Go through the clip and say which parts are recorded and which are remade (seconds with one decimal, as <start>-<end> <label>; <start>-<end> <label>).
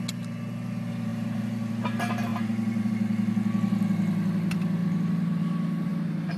0.0-1.1 recorded; 1.1-1.8 remade; 1.8-2.3 recorded; 2.3-2.9 remade; 2.9-6.4 recorded